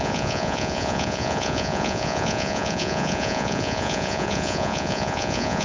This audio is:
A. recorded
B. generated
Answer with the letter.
B